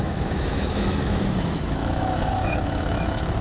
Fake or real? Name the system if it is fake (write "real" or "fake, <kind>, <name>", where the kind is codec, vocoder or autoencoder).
fake, autoencoder, DAC-VAE